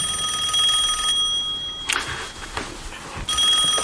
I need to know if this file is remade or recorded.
recorded